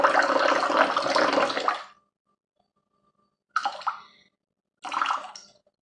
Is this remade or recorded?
recorded